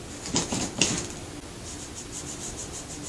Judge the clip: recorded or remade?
recorded